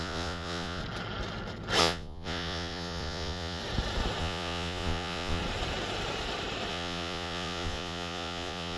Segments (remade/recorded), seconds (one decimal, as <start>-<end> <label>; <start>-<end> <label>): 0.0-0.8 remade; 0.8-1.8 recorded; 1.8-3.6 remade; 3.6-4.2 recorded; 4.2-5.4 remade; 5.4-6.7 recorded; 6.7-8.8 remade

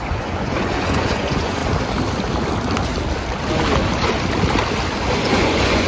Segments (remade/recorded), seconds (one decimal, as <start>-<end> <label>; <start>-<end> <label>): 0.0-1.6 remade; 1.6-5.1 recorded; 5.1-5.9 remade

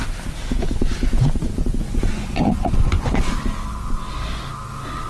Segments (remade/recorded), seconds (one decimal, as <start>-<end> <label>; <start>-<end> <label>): 0.0-1.8 recorded; 1.8-3.3 remade; 3.3-5.1 recorded